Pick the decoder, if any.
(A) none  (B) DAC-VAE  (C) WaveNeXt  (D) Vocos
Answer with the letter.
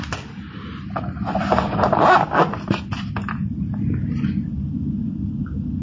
A